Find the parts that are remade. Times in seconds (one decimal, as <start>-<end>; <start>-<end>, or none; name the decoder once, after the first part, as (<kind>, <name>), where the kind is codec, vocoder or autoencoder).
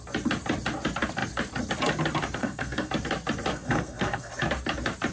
2.4-2.9 (codec, SNAC); 3.5-4.3